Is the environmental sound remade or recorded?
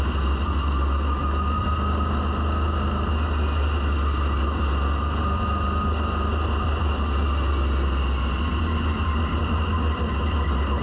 recorded